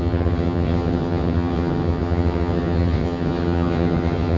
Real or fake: fake